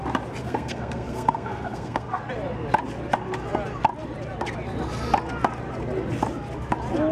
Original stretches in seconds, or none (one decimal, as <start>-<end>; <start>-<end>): 0.0-0.4; 2.2-7.1